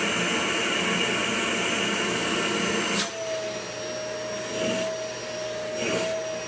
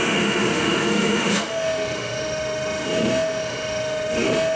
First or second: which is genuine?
first